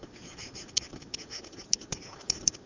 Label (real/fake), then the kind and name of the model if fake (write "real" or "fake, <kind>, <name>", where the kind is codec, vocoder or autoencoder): real